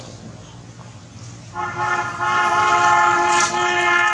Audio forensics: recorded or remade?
recorded